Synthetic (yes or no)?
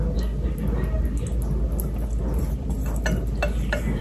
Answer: no